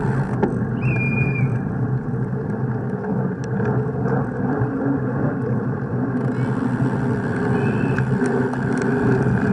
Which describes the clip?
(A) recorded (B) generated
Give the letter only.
A